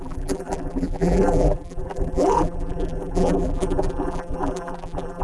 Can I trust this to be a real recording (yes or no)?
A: no